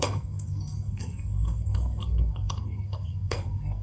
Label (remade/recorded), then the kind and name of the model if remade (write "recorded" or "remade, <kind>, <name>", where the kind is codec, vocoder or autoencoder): remade, codec, SNAC